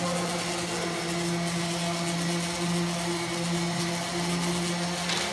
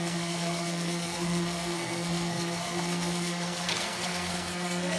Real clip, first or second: first